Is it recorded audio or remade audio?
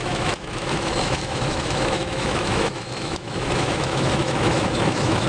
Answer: remade